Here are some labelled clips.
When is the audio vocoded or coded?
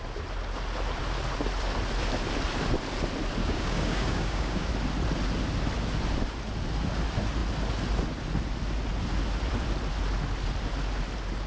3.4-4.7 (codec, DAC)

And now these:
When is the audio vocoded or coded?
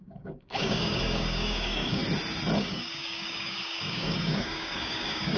0.0-2.0 (codec, DAC); 2.6-5.4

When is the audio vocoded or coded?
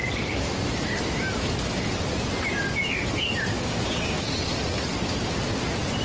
3.5-4.3 (codec, DAC)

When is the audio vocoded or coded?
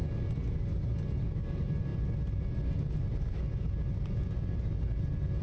none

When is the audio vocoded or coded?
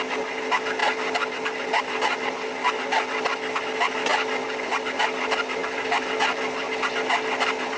none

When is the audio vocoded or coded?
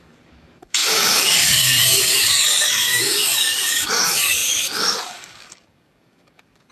0.0-6.7 (codec, DAC)